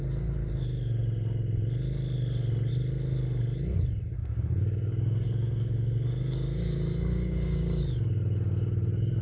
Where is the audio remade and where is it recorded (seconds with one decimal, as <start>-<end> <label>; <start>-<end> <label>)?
0.0-4.2 recorded; 4.2-7.8 remade; 7.8-9.2 recorded